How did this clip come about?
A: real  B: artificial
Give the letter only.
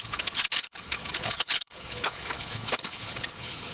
B